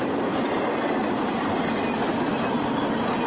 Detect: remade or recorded recorded